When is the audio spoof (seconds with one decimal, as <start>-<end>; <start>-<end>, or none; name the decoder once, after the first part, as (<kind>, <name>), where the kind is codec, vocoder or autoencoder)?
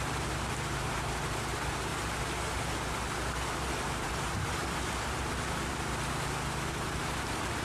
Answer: 0.0-1.9 (vocoder, BigVGAN v2); 4.1-4.6; 7.0-7.6